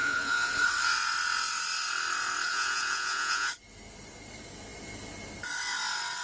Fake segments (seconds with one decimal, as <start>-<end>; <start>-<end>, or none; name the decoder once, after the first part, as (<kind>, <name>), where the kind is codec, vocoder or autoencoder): 0.0-0.5 (vocoder, Vocos); 2.5-3.5

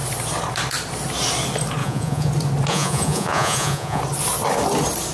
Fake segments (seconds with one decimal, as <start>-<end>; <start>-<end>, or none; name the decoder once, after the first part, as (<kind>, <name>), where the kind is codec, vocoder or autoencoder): 1.8-2.3 (vocoder, Vocos); 2.7-4.0

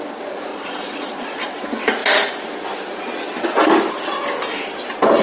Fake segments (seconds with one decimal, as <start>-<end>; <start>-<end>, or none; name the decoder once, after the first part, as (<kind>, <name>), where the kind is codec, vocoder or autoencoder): 0.5-1.6 (vocoder, Vocos)

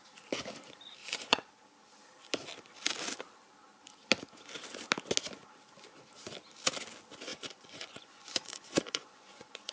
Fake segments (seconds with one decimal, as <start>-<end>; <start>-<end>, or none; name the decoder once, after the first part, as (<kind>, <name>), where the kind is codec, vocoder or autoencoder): 1.0-1.5 (vocoder, Vocos); 7.3-9.7

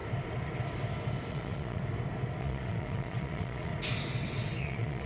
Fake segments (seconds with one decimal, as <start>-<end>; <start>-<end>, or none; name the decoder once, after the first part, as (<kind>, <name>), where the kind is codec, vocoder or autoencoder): 1.3-1.8 (vocoder, Vocos); 2.4-3.7; 4.6-5.1

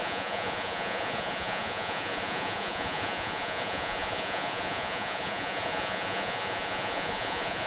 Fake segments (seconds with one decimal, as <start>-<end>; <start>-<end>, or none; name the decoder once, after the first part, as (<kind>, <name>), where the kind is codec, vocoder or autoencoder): 0.0-7.7 (vocoder, Vocos)

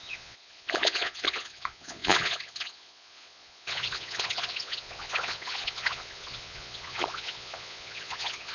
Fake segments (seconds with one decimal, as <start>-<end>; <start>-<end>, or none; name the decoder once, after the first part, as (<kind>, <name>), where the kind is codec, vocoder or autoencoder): 0.0-8.5 (vocoder, Vocos)